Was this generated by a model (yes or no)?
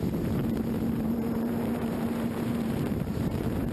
yes